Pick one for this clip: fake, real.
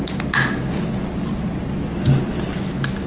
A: real